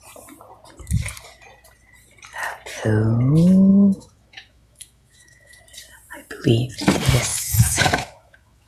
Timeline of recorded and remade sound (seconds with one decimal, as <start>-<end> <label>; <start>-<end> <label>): 0.0-3.7 recorded; 3.7-5.6 remade; 5.6-7.3 recorded; 7.3-8.7 remade